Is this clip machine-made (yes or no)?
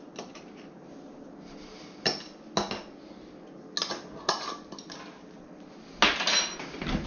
no